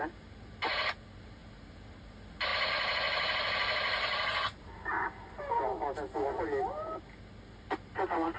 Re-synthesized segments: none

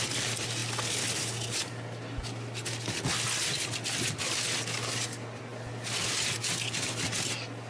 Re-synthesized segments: none

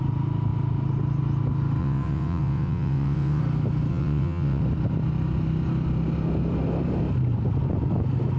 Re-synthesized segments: 1.8-3.4; 3.9-4.6